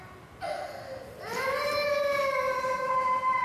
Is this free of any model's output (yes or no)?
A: yes